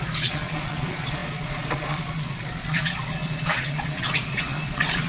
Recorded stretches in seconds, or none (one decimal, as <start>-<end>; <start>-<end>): none